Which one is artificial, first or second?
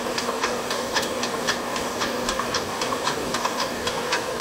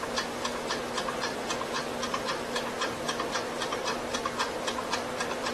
first